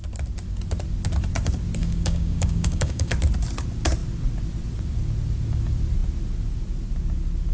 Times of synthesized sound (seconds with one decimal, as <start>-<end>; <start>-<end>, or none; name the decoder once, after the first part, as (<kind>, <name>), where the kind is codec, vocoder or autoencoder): 1.8-3.1 (codec, DAC)